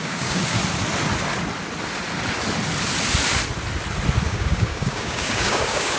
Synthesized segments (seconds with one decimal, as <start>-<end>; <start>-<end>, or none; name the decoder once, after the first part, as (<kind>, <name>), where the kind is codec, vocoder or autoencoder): 0.0-0.6 (codec, DAC); 4.2-6.0